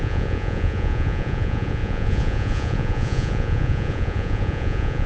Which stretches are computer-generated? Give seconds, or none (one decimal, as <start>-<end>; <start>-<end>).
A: 0.0-5.1